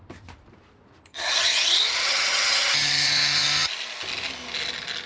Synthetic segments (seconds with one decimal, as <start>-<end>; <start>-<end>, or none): 1.1-3.7